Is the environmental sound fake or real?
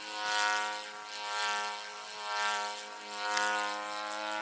real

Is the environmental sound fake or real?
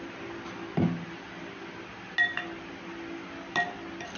real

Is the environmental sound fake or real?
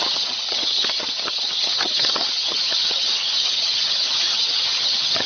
fake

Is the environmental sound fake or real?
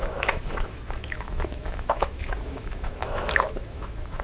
fake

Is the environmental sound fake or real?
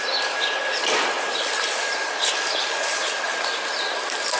real